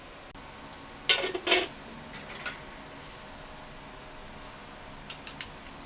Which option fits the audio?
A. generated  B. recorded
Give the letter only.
B